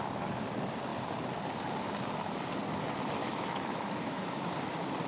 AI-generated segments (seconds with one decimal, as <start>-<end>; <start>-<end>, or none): 3.2-4.4